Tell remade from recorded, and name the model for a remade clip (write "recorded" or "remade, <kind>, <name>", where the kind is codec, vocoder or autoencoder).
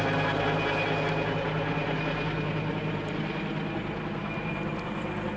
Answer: recorded